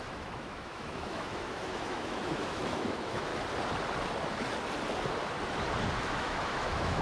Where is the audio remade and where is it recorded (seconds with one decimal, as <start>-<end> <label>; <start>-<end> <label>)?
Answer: 0.0-3.3 remade; 3.3-6.0 recorded; 6.0-7.0 remade